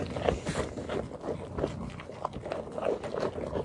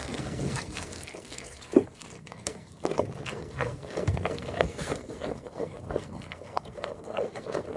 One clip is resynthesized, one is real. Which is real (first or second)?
first